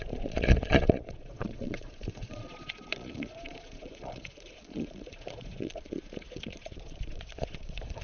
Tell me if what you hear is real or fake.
fake